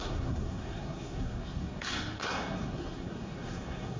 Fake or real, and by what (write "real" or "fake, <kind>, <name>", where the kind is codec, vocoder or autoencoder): fake, codec, SNAC